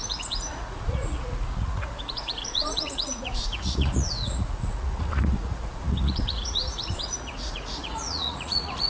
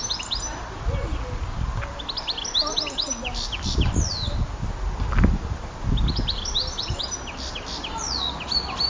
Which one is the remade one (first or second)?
first